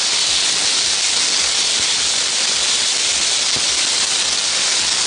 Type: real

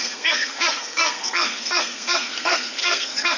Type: fake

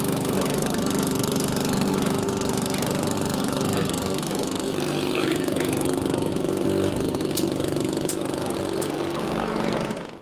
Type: fake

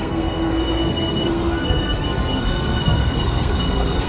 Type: fake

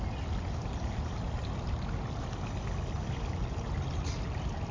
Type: real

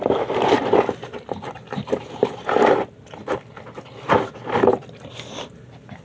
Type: real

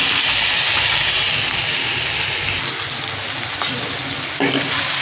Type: real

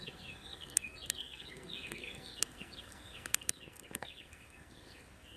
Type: fake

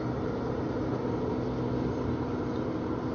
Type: real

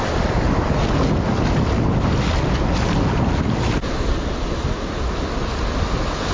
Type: real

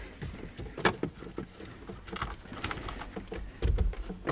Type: real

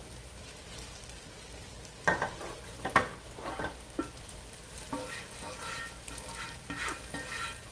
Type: real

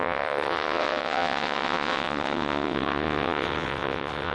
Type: fake